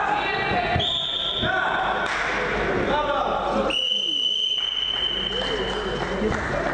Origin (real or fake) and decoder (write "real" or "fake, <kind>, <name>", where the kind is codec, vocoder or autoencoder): real